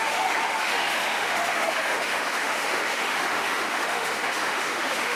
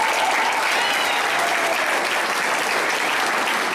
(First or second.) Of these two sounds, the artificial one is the first